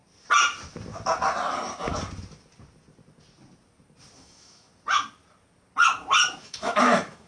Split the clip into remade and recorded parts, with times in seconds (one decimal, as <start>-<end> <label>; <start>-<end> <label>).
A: 0.0-4.2 recorded; 4.2-4.7 remade; 4.7-6.4 recorded; 6.4-7.3 remade